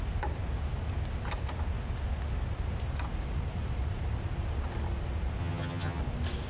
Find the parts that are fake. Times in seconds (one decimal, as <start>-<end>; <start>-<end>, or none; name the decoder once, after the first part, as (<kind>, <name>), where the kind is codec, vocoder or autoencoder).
5.4-6.0 (vocoder, HiFi-GAN)